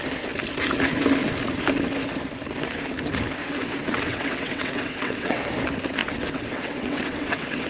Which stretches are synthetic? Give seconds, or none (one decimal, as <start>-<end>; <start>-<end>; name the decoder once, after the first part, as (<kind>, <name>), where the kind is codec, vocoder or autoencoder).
3.4-5.4 (vocoder, WaveNeXt); 6.0-7.7